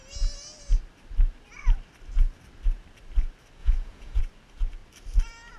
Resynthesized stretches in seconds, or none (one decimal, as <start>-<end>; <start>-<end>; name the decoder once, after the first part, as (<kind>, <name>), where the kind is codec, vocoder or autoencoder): 3.6-4.2 (vocoder, Vocos)